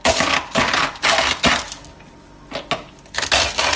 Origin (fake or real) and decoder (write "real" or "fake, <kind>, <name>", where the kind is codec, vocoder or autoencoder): real